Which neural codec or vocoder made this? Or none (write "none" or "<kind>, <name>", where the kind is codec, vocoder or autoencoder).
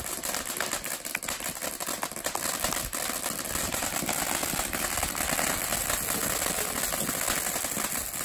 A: none